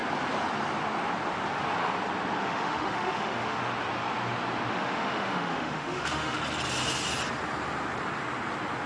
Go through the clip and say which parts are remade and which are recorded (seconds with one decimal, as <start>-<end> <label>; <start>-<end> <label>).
0.0-2.4 recorded; 2.4-3.6 remade; 3.6-4.7 recorded; 4.7-6.4 remade; 6.4-8.9 recorded